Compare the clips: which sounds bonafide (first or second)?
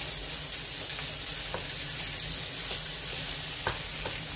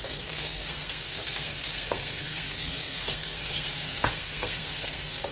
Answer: first